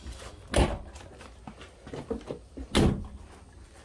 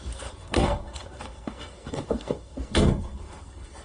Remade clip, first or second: second